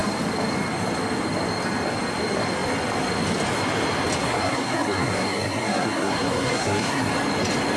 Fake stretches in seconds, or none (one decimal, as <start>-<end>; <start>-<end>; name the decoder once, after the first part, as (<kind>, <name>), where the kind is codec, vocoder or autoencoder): 4.2-7.1 (codec, SNAC)